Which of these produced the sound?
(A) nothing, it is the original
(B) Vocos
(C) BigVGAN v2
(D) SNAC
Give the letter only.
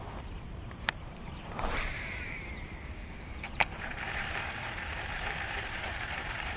C